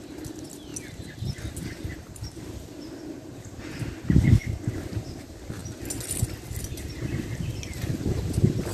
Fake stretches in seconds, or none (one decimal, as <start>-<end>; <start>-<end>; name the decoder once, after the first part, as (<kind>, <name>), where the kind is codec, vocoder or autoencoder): none